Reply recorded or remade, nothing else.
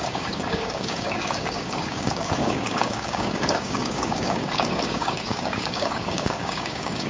remade